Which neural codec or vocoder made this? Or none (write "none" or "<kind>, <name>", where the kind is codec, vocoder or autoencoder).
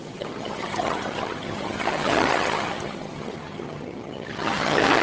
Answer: vocoder, HiFi-GAN